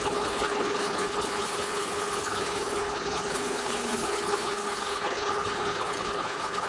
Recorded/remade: remade